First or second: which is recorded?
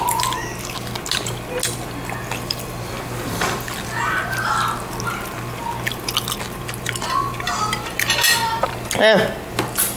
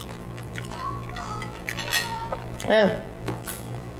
first